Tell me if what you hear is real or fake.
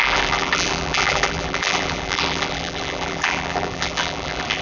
fake